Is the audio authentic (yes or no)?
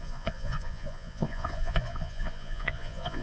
no